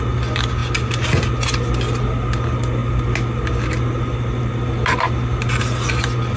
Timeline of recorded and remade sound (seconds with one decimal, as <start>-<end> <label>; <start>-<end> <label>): 0.0-6.4 recorded